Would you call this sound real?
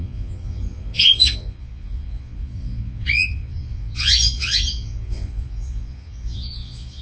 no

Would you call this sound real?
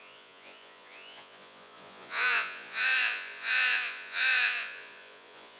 no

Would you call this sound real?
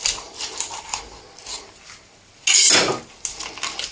yes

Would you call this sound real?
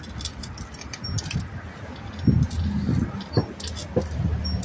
yes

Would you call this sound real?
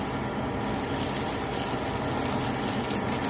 yes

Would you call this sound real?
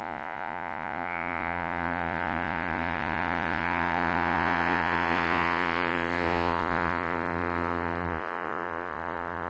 no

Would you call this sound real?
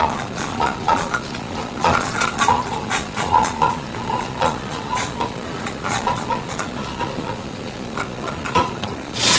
no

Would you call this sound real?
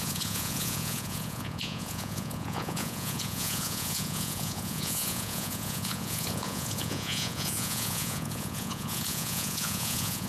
no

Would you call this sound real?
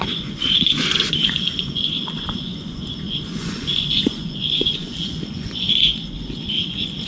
no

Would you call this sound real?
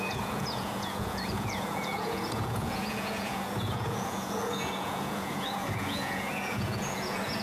no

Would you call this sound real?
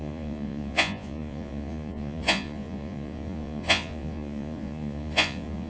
no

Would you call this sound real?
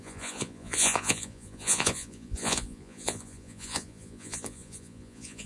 no